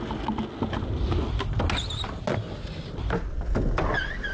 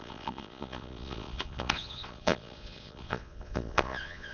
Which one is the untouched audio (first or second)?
first